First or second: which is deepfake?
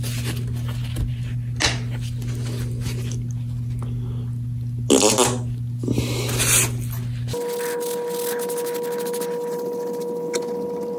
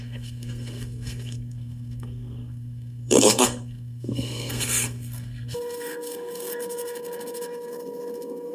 second